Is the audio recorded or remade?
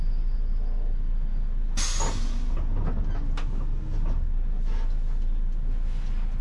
recorded